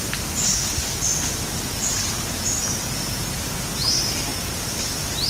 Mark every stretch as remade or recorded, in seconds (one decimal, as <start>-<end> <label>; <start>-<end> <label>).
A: 0.0-5.3 recorded